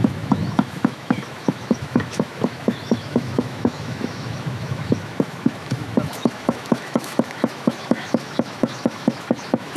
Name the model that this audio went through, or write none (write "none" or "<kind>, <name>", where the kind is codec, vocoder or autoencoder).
autoencoder, DAC-VAE